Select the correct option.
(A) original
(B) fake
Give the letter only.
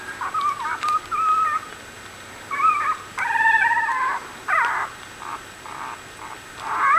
A